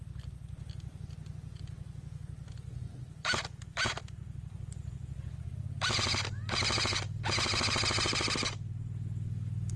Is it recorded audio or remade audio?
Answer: recorded